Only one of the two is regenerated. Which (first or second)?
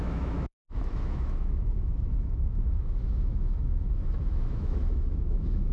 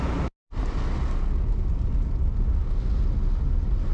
first